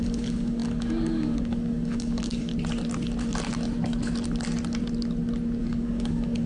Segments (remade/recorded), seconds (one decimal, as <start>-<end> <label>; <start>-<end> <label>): 0.0-2.5 remade; 2.5-5.6 recorded; 5.6-6.5 remade